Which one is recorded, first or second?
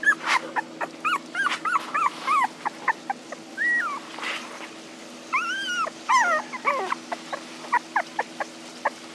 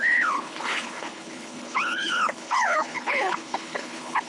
first